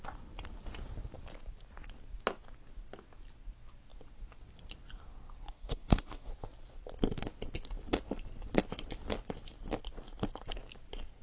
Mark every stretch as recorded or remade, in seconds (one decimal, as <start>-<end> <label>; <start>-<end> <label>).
0.0-5.5 recorded; 5.5-6.3 remade; 6.3-11.2 recorded